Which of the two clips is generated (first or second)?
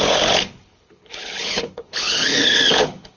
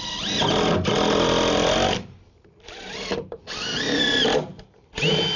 first